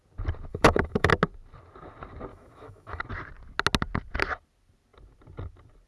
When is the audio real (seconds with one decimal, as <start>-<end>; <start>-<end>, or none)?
0.0-0.5; 1.1-2.3; 3.0-5.9